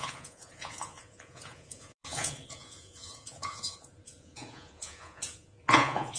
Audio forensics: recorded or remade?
remade